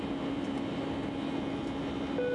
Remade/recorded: recorded